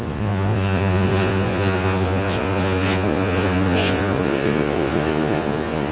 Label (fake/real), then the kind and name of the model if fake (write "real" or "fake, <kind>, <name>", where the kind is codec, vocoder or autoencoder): fake, vocoder, Vocos